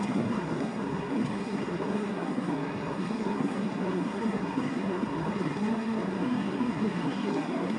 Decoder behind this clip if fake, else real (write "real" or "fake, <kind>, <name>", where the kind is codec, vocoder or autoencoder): fake, codec, SNAC